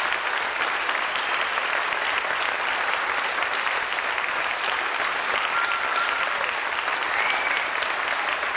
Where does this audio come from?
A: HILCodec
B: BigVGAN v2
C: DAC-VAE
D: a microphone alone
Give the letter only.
D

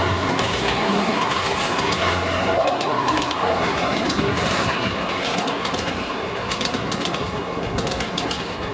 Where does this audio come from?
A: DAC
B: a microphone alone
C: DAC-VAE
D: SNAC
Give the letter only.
D